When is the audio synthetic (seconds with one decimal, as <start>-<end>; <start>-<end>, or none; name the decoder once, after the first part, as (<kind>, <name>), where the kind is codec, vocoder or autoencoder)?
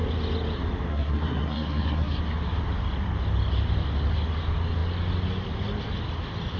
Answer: 0.9-2.2 (codec, SNAC)